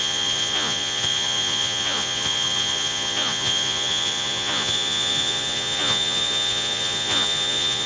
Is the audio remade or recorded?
remade